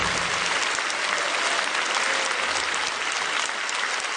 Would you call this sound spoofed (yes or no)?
no